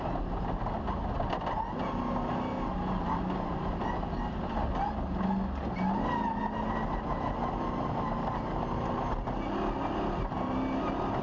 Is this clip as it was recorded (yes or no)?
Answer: yes